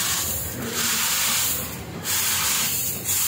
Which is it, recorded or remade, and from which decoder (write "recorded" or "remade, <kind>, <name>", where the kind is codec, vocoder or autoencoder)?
recorded